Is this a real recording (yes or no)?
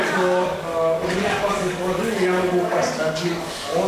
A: no